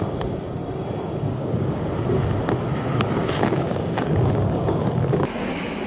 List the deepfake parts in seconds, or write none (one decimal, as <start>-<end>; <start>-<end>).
1.3-1.9; 3.2-5.5